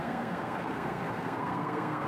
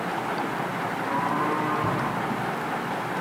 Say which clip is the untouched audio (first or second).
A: second